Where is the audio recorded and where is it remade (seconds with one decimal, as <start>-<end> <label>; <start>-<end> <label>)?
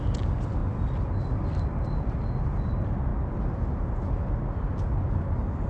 0.0-5.7 recorded